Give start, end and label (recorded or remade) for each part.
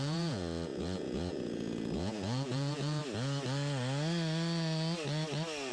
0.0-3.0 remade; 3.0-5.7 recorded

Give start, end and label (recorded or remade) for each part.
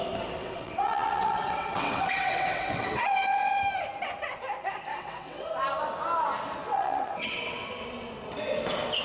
0.0-0.4 recorded; 0.4-3.6 remade; 3.6-4.9 recorded; 4.9-5.5 remade; 5.5-6.6 recorded; 6.6-7.8 remade; 7.8-9.0 recorded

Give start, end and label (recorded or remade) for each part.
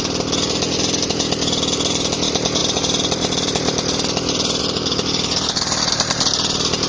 0.0-2.6 recorded; 2.6-4.6 remade; 4.6-6.9 recorded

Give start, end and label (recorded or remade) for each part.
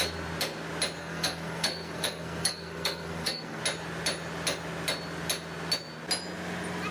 0.0-1.0 recorded; 1.0-3.6 remade; 3.6-6.9 recorded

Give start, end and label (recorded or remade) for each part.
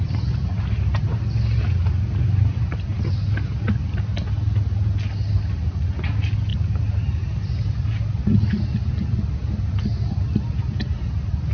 0.0-11.5 recorded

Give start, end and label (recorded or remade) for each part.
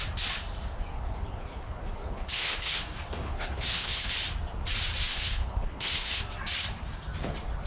0.0-0.9 recorded; 0.9-2.8 remade; 2.8-3.2 recorded; 3.2-4.1 remade; 4.1-5.1 recorded; 5.1-6.2 remade; 6.2-7.7 recorded